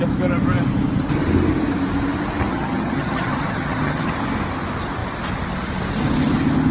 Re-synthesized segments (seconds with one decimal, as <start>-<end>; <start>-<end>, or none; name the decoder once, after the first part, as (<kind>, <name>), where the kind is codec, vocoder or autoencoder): 2.5-4.1 (vocoder, HiFi-GAN)